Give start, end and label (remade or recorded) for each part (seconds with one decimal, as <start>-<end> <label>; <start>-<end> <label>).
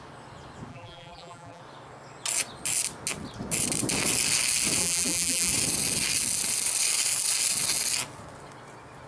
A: 0.0-0.7 recorded; 0.7-1.6 remade; 1.6-4.8 recorded; 4.8-5.5 remade; 5.5-9.1 recorded